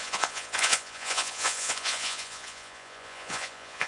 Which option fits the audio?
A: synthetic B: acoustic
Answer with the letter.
A